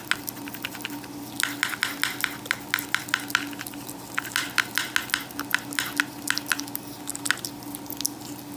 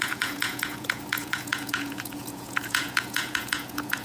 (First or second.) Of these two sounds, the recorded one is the first